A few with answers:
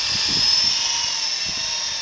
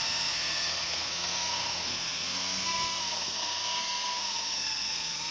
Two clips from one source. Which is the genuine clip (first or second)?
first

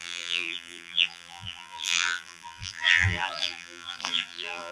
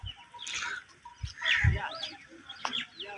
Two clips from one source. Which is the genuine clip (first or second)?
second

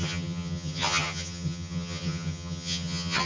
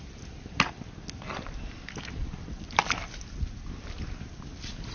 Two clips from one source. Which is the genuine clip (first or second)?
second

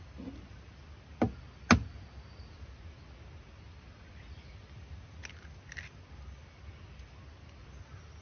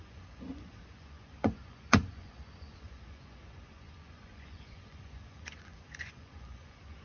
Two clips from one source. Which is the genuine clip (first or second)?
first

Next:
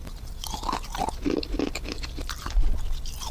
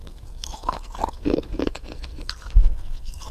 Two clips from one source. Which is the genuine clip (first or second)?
first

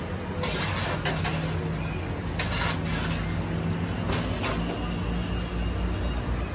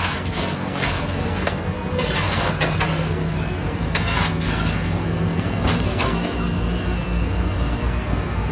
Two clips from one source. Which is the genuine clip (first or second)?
first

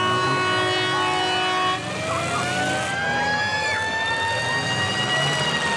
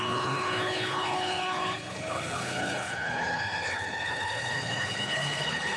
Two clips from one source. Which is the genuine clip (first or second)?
first